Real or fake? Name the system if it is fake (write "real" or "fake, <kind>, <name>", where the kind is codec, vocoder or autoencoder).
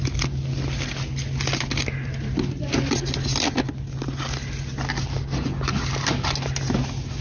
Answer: real